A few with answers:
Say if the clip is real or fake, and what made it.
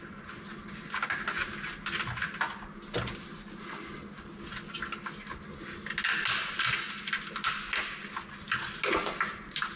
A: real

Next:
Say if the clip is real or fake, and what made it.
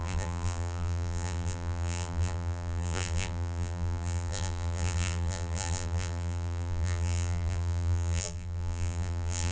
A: fake, vocoder, BigVGAN v2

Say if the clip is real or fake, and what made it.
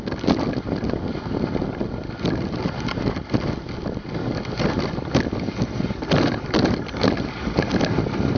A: real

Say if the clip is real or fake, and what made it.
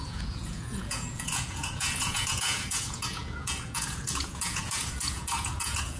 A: fake, vocoder, Vocos